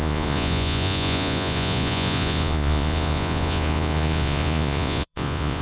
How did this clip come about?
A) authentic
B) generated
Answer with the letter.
B